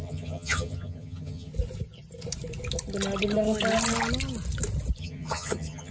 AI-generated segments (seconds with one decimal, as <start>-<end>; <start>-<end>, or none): 0.0-1.5; 5.0-5.9